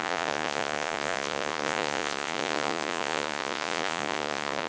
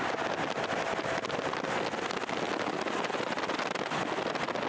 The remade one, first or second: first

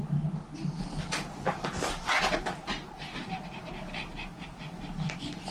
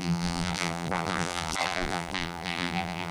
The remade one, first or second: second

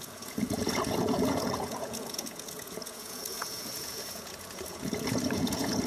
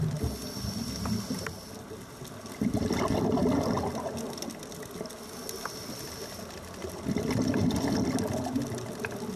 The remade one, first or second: first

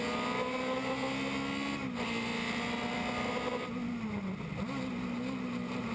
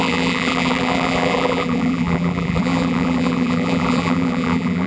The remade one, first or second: second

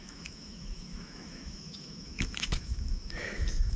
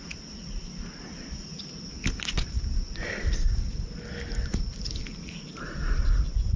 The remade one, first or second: first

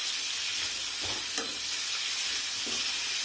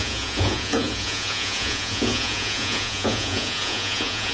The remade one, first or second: second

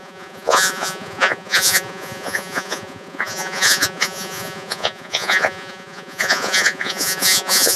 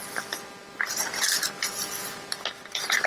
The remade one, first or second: first